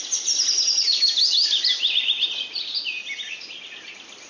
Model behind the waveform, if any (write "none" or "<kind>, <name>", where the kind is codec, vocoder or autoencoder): none